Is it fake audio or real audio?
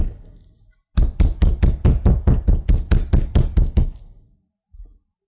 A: real